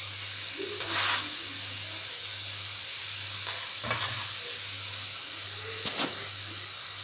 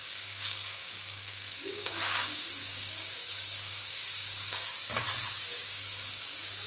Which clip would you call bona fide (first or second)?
first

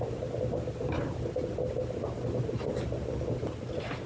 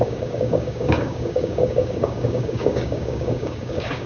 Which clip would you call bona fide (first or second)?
first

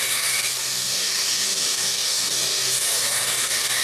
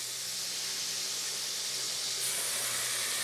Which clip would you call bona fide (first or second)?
second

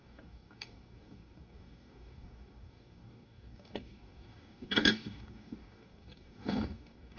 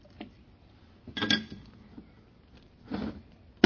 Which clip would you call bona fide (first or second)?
second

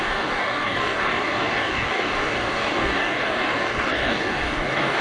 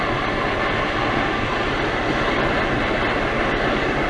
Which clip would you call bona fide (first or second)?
second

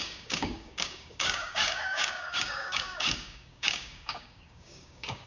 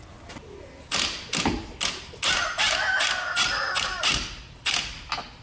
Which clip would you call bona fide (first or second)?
second